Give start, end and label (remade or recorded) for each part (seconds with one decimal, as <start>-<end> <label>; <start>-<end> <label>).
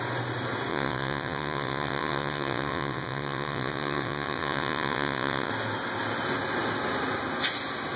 0.0-0.7 recorded; 0.7-5.5 remade; 5.5-8.0 recorded